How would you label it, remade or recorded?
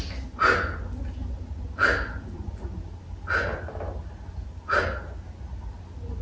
recorded